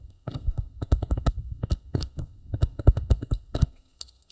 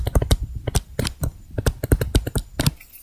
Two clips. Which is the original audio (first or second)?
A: second